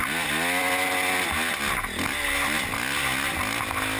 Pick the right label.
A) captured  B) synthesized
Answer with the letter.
A